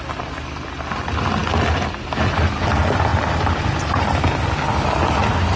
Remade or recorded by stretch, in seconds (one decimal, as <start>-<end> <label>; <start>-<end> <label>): 0.0-3.1 recorded; 3.1-4.5 remade; 4.5-5.6 recorded